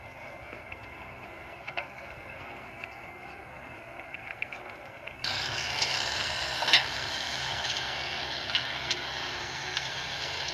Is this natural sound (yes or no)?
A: no